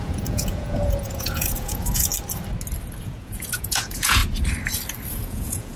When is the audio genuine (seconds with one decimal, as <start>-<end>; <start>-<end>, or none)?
2.1-3.0; 4.2-5.1